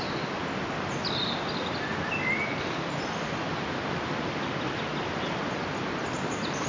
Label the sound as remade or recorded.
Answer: recorded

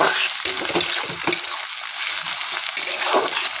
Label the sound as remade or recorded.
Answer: recorded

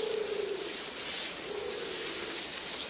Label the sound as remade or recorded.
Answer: recorded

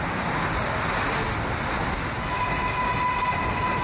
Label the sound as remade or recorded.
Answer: recorded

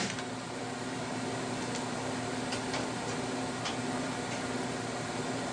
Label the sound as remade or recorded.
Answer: remade